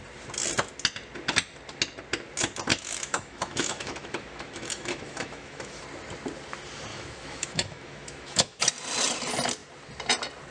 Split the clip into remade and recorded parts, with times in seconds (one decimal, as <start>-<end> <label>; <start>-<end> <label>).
0.0-2.7 recorded; 2.7-5.8 remade; 5.8-6.9 recorded; 6.9-8.6 remade; 8.6-10.5 recorded